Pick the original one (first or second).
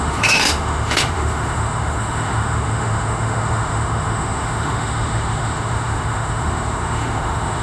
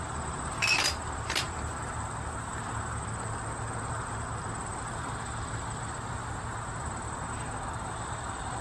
second